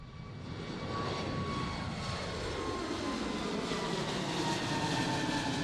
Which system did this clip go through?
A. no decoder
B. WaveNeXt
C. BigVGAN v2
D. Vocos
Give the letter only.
A